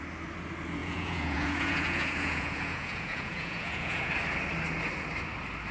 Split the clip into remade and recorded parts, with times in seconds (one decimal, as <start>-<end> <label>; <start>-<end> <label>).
0.0-0.8 recorded; 0.8-4.1 remade; 4.1-5.7 recorded